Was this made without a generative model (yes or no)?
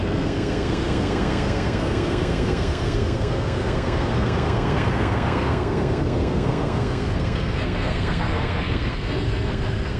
no